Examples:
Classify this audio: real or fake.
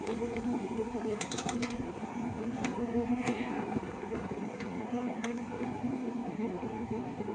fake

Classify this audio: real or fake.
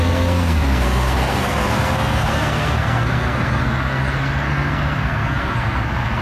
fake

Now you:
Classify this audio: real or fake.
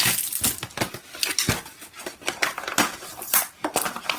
real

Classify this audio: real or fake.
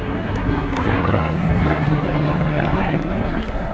fake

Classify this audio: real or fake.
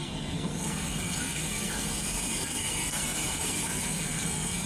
fake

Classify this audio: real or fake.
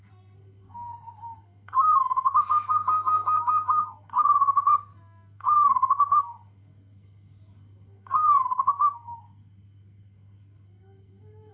fake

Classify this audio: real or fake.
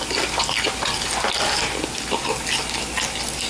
real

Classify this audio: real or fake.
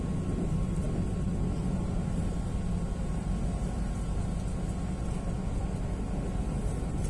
real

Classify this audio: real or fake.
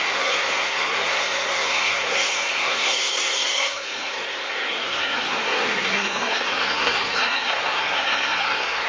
fake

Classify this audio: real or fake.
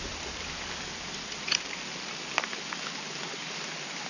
real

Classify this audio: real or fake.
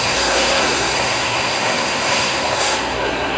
fake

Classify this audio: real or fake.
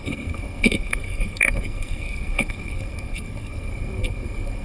fake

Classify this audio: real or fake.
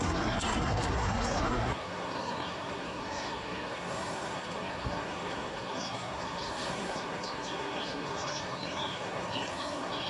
fake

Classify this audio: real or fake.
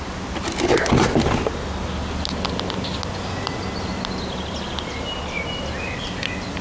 real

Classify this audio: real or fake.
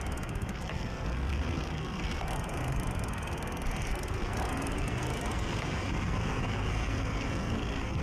fake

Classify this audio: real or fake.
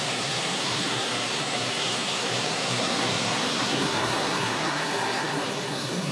fake